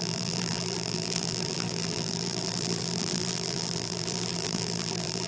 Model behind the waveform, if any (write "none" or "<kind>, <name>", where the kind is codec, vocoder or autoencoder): vocoder, BigVGAN v2